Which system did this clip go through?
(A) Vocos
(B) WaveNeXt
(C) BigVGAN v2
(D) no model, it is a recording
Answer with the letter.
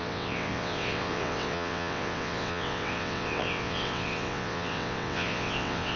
B